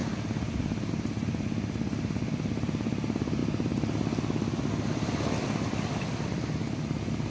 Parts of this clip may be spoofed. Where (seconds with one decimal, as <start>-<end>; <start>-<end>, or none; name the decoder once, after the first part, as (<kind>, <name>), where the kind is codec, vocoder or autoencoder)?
none